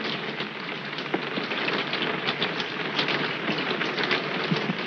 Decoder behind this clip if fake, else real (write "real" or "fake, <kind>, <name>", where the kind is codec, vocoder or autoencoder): real